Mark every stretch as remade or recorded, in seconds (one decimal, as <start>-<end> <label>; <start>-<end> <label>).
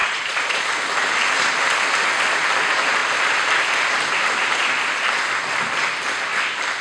0.0-0.7 remade; 0.7-6.8 recorded